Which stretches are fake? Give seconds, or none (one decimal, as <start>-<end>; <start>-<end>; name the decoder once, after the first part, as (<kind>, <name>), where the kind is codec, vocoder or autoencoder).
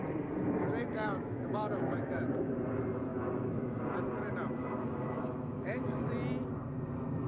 0.8-2.5 (autoencoder, DAC-VAE); 3.1-3.8; 4.6-6.0